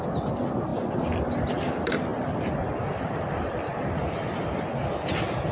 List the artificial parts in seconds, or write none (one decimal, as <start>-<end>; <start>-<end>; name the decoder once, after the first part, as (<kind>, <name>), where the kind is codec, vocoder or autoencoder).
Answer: none